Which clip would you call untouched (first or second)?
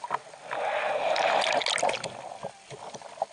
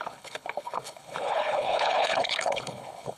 first